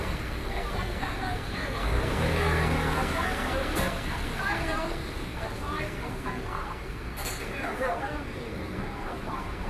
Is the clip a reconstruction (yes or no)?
yes